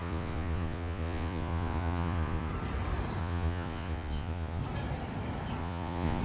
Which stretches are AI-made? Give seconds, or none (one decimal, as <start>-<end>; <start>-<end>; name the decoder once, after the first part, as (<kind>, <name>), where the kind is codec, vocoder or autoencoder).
0.0-2.5 (vocoder, Vocos); 3.2-4.6; 5.6-6.2